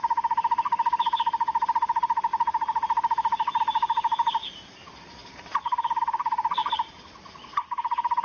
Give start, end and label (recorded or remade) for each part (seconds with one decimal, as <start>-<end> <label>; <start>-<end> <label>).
0.0-2.3 recorded; 2.3-3.6 remade; 3.6-5.2 recorded; 5.2-6.0 remade; 6.0-8.2 recorded